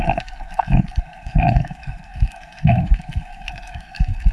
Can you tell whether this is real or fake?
fake